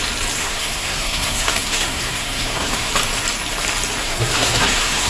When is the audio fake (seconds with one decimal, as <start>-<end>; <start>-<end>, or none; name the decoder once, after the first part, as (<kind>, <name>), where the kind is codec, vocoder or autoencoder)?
0.4-2.9 (codec, SNAC); 4.0-5.1